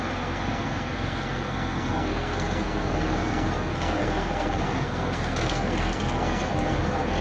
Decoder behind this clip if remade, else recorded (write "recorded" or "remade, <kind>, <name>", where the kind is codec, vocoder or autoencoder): remade, codec, SNAC